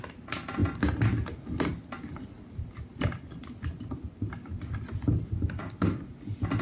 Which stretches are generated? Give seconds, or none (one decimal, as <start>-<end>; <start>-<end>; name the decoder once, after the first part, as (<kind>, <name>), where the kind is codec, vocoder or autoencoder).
none